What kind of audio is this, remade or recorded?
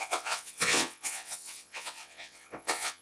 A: remade